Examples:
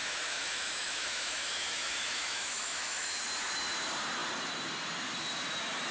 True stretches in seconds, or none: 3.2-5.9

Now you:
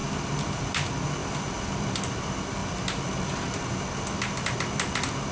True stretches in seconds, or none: 0.6-1.2; 1.9-5.3

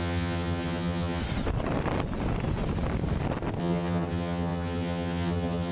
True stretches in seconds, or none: 1.2-3.6

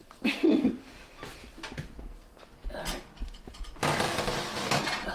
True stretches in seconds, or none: 0.9-2.0; 2.4-5.1